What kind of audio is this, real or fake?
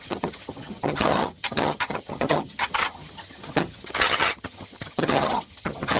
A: fake